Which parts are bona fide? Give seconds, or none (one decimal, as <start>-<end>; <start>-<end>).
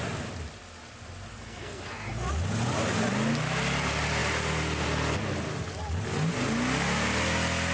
0.0-1.3; 2.1-7.7